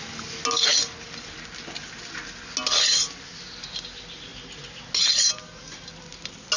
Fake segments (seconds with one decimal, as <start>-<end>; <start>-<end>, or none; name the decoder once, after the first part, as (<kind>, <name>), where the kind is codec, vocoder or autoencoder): none